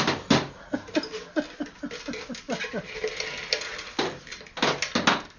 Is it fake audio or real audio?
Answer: real